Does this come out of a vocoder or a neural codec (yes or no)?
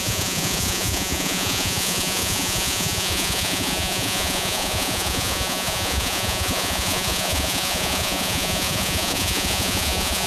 yes